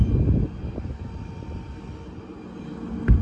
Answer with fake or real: real